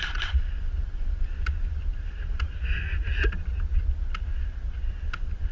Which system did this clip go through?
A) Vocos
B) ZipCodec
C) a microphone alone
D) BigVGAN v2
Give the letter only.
C